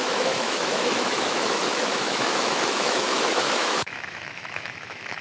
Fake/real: fake